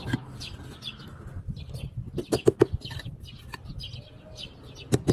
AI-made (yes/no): no